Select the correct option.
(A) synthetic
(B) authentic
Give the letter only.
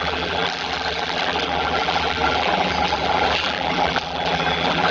A